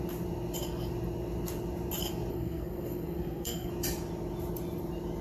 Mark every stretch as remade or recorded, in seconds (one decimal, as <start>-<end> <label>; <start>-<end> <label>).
0.0-2.3 recorded; 2.3-3.7 remade; 3.7-5.2 recorded